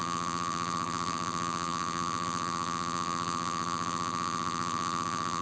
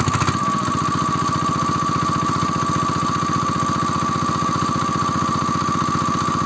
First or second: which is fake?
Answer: first